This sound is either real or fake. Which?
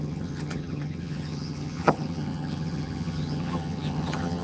fake